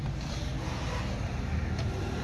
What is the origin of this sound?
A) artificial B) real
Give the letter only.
B